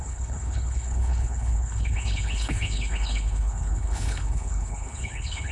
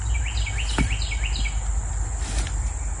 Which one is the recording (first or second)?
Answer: second